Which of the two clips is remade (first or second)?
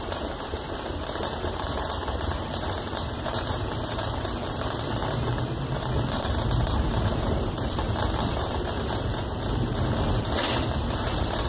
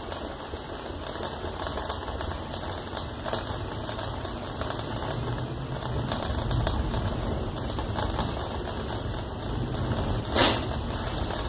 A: first